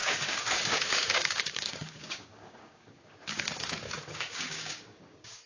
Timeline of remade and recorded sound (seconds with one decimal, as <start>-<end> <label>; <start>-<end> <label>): 0.0-5.5 remade